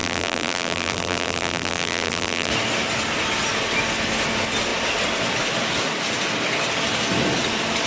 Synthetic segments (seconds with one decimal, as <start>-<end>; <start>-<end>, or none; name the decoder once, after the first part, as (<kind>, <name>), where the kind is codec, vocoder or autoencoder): 0.0-2.5 (vocoder, BigVGAN v2)